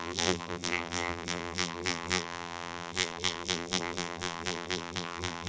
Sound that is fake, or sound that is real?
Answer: fake